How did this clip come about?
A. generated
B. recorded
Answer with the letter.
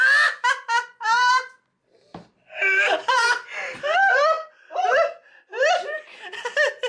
A